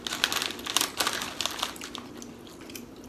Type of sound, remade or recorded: recorded